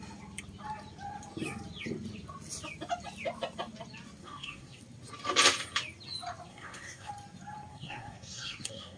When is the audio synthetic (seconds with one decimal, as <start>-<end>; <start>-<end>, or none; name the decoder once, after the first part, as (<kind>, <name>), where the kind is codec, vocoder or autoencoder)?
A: 4.2-4.8 (codec, SNAC); 6.5-7.1; 7.7-9.0